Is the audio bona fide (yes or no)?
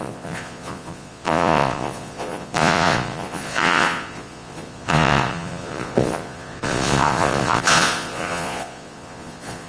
no